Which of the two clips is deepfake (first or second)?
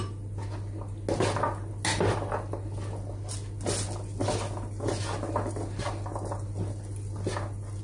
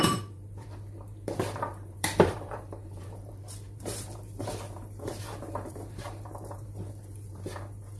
second